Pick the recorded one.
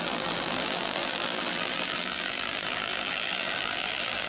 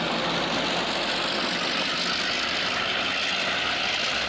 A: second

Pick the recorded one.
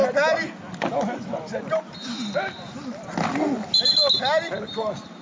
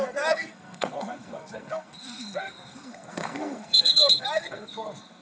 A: first